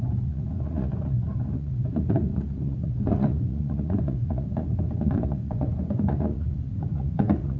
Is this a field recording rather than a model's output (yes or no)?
no